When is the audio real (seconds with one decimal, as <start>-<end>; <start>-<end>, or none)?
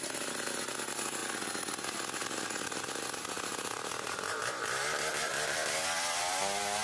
0.0-2.2; 3.9-6.8